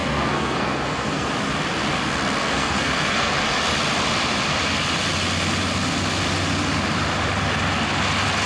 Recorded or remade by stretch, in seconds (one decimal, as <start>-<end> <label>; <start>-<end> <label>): 0.0-1.3 remade; 1.3-2.4 recorded; 2.4-3.3 remade; 3.3-8.5 recorded